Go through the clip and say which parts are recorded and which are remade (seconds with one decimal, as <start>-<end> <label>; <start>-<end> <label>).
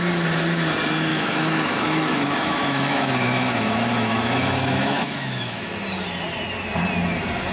0.0-1.1 recorded; 1.1-5.6 remade; 5.6-7.5 recorded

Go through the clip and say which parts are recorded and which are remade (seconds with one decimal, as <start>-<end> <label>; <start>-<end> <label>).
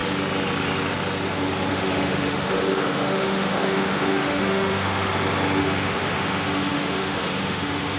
0.0-1.7 recorded; 1.7-5.1 remade; 5.1-5.6 recorded; 5.6-8.0 remade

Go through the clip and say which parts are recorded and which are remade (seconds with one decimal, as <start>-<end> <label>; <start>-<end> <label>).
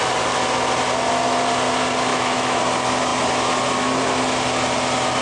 0.0-2.1 recorded; 2.1-2.6 remade; 2.6-5.2 recorded